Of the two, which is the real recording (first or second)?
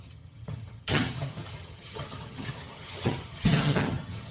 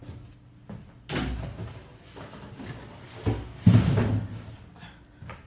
second